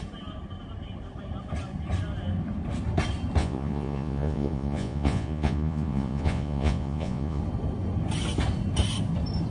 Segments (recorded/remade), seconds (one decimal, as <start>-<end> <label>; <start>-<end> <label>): 0.0-3.4 recorded; 3.4-7.4 remade; 7.4-9.5 recorded